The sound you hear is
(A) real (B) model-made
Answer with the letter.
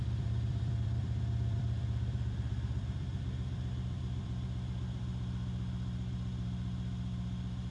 B